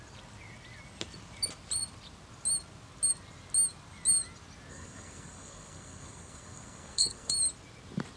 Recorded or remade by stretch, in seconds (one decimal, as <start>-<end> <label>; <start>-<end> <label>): 0.0-4.7 recorded; 4.7-7.3 remade; 7.3-8.2 recorded

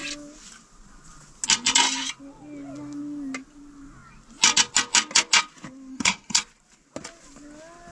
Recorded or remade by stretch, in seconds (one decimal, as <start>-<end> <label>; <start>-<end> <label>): 0.0-5.9 recorded; 5.9-6.4 remade; 6.4-7.9 recorded

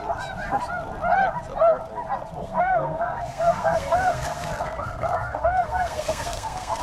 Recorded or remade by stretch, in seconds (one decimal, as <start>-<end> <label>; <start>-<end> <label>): 0.0-2.4 recorded; 2.4-6.8 remade

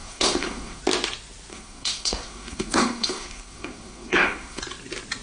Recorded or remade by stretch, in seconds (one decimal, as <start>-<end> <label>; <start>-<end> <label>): 0.0-0.8 remade; 0.8-1.5 recorded; 1.5-4.6 remade; 4.6-5.2 recorded

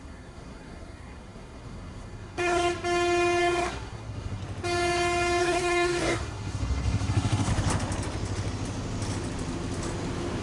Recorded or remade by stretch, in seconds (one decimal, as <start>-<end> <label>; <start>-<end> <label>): 0.0-2.7 remade; 2.7-3.4 recorded; 3.4-4.4 remade; 4.4-5.4 recorded; 5.4-7.5 remade; 7.5-10.4 recorded